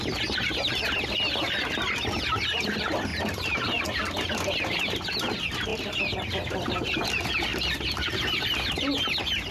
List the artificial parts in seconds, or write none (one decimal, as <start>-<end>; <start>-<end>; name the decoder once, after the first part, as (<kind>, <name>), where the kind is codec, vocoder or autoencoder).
3.1-4.8 (vocoder, BigVGAN v2); 7.5-8.1